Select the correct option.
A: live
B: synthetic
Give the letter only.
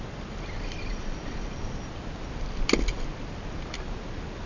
A